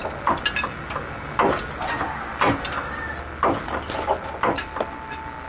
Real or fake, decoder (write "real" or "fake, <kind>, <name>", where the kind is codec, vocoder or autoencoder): real